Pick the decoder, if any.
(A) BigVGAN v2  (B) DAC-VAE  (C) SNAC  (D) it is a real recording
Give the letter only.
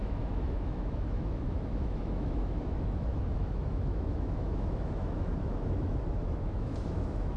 B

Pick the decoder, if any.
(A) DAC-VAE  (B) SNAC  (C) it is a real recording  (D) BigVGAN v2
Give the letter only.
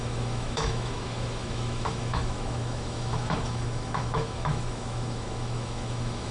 A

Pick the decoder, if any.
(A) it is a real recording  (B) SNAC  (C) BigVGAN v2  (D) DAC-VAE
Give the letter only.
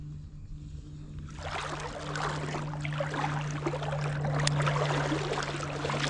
A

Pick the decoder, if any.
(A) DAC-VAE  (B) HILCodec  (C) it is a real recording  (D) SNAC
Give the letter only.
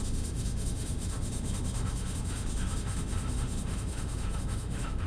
A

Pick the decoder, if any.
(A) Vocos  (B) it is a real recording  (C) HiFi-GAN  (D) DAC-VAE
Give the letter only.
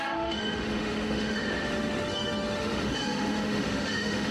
D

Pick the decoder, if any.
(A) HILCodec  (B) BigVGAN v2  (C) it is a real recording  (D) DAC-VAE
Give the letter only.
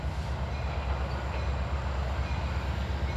C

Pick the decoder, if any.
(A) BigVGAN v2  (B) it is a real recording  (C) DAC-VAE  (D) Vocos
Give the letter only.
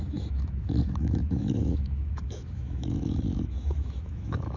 C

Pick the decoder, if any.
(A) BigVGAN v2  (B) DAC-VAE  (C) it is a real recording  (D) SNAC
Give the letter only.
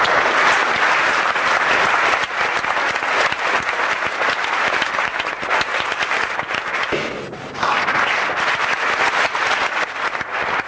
C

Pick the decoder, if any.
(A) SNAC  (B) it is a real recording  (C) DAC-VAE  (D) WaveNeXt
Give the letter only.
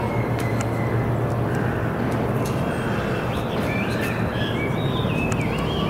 B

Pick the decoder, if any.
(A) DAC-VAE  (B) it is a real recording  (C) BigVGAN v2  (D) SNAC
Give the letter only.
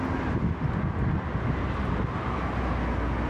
B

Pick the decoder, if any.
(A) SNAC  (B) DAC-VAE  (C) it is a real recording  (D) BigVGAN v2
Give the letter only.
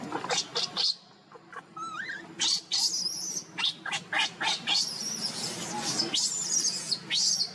C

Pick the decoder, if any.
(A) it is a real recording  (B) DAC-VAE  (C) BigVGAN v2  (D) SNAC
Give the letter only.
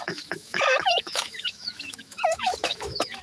B